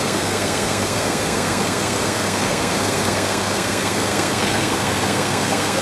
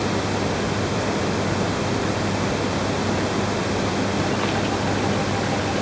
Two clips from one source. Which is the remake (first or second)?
first